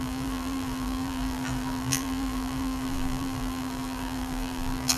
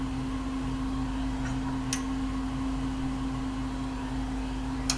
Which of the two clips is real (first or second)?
second